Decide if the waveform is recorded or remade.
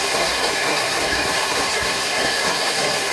remade